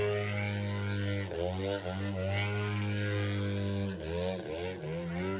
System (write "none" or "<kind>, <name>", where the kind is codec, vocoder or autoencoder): none